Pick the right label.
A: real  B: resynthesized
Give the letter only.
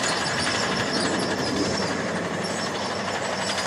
B